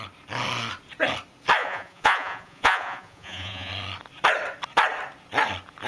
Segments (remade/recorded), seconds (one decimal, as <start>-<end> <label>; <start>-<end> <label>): 0.0-1.6 recorded; 1.6-3.7 remade; 3.7-5.9 recorded